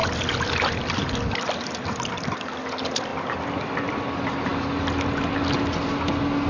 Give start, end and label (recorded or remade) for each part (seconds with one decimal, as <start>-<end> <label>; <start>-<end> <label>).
0.0-2.5 remade; 2.5-3.1 recorded; 3.1-4.0 remade; 4.0-6.5 recorded

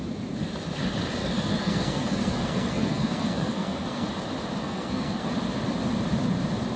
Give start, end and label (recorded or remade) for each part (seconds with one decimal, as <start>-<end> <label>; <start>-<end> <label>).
0.0-1.2 recorded; 1.2-4.1 remade; 4.1-4.6 recorded; 4.6-5.3 remade; 5.3-6.8 recorded

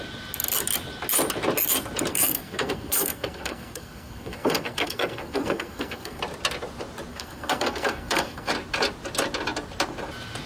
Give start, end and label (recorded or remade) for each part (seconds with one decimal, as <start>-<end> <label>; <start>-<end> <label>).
0.0-2.1 recorded; 2.1-6.2 remade; 6.2-7.1 recorded; 7.1-8.5 remade; 8.5-10.5 recorded

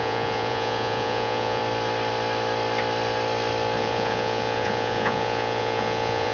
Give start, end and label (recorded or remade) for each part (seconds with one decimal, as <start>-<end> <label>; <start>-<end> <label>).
0.0-1.6 remade; 1.6-3.8 recorded; 3.8-6.3 remade